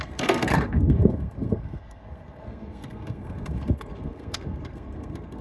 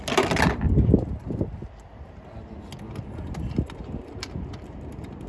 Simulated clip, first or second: first